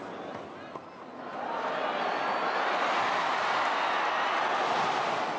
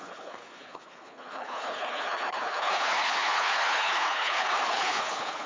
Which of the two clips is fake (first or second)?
second